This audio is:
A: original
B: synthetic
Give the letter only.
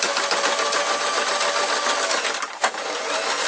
A